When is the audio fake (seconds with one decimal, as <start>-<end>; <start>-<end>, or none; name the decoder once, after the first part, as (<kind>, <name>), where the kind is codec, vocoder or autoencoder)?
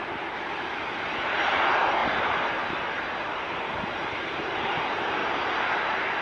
1.5-6.2 (vocoder, BigVGAN v2)